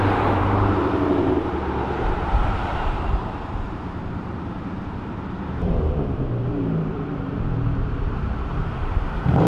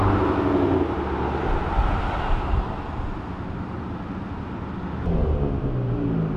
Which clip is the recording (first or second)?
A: second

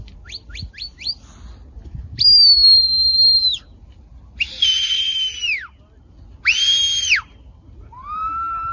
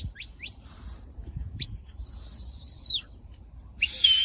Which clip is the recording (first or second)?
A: first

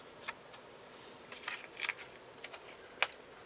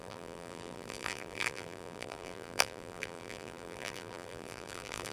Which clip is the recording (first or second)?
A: first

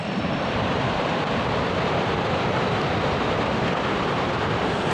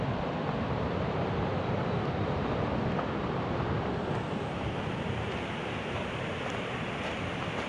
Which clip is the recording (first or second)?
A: second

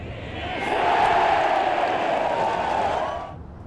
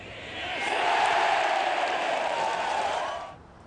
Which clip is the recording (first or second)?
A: first